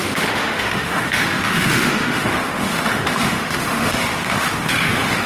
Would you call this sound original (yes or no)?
no